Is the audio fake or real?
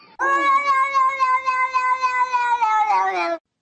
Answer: real